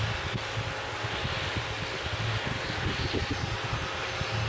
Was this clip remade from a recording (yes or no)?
no